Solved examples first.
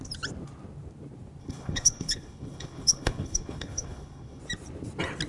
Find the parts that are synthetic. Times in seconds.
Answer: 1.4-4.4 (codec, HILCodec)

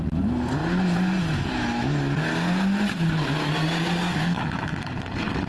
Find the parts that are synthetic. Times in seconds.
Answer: none

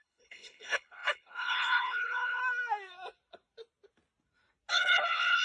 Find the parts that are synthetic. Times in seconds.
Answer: 0.0-2.4 (codec, HILCodec); 4.7-5.4

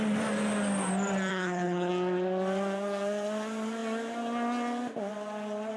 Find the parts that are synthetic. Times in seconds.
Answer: 1.3-1.9 (codec, HILCodec)